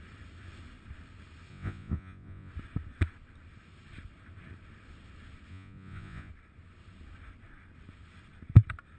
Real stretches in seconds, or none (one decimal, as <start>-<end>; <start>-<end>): 0.0-1.5; 2.5-5.5; 6.3-9.0